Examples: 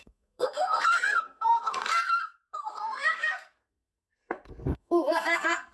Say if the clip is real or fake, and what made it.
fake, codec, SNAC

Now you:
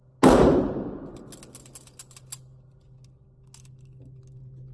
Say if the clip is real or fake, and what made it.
real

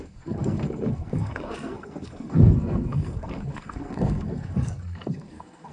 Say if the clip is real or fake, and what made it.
fake, codec, SNAC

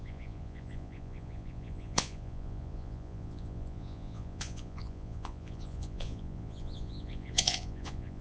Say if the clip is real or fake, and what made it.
fake, vocoder, Vocos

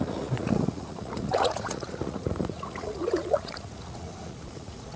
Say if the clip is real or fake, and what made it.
fake, vocoder, Vocos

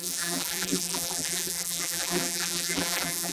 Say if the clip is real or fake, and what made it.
fake, vocoder, BigVGAN v2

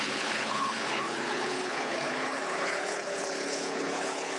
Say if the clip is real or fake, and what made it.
fake, codec, HILCodec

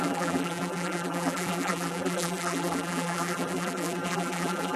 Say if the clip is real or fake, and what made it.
fake, vocoder, BigVGAN v2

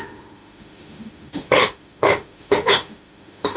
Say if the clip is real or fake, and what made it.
fake, autoencoder, DAC-VAE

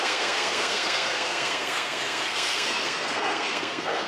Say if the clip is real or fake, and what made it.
fake, codec, SNAC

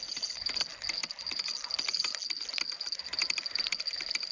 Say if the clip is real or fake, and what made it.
real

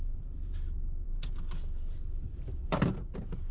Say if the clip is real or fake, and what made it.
fake, vocoder, BigVGAN v2